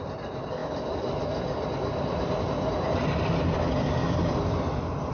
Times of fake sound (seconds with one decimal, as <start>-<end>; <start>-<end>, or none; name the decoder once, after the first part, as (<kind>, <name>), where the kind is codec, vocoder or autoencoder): none